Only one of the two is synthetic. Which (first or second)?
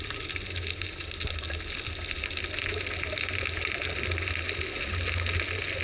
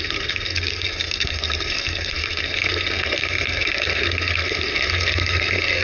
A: second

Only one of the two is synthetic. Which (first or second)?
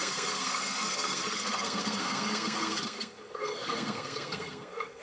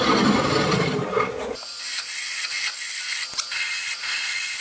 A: first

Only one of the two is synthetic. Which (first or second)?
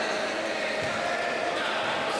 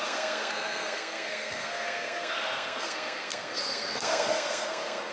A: second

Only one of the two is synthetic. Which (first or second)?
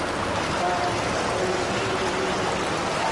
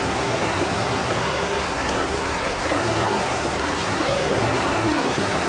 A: second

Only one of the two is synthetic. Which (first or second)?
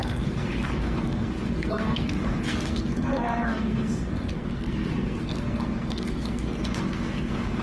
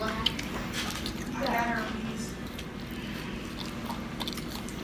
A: first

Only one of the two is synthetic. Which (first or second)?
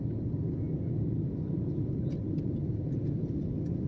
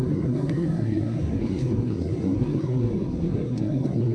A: second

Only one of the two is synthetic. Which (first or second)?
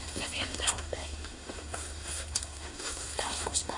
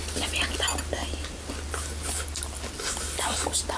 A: first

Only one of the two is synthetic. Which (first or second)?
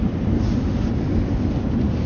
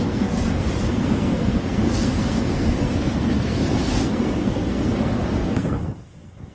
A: second